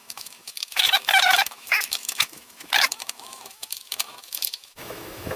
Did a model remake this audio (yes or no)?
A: yes